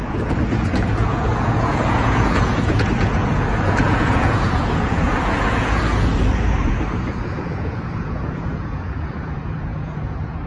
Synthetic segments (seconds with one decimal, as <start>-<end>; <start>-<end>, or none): 0.0-10.5